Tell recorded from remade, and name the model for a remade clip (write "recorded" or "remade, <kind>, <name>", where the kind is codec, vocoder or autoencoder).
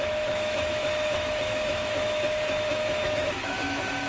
remade, autoencoder, DAC-VAE